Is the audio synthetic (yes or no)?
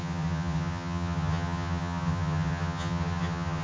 yes